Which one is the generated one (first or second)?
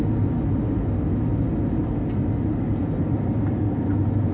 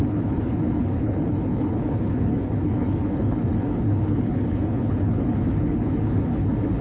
second